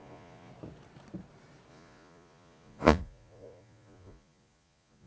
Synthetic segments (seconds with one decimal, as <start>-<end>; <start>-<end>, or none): 0.0-0.5; 1.7-5.1